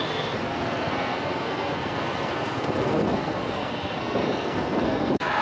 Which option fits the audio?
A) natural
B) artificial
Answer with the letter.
B